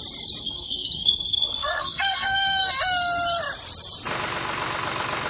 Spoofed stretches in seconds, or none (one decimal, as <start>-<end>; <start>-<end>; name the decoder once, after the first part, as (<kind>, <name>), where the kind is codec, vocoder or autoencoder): 0.4-2.7 (codec, SNAC)